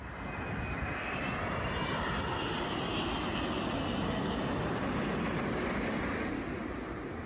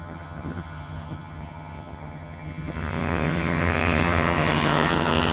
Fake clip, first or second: second